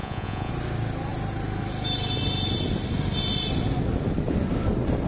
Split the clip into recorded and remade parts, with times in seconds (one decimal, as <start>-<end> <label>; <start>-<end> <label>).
0.0-0.5 remade; 0.5-5.1 recorded